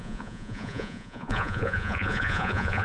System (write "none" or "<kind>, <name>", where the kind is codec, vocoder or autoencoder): vocoder, Vocos